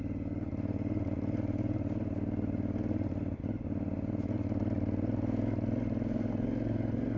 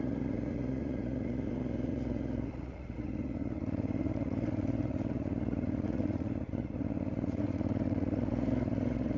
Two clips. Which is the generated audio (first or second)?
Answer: second